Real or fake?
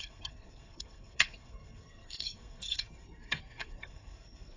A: fake